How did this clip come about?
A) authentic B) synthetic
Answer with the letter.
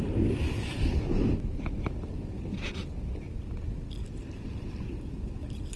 A